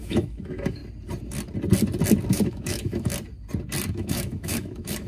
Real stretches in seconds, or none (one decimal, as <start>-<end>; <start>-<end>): 0.8-2.3; 3.1-3.9

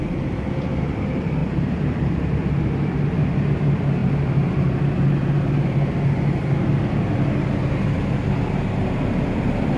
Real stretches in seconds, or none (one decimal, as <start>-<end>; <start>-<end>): 4.0-7.8

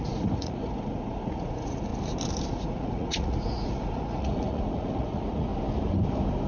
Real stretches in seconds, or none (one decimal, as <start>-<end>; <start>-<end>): 1.9-2.5; 5.5-6.5

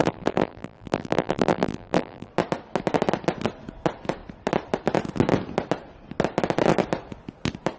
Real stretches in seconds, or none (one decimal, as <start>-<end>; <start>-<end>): 2.3-7.8

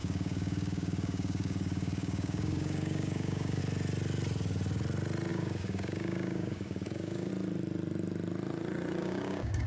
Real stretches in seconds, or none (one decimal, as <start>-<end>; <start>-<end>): 3.6-5.3; 7.3-9.0

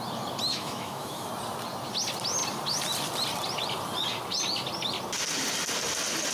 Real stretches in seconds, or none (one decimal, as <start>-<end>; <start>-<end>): 0.0-0.5; 1.3-6.3